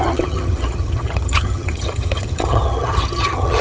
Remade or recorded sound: remade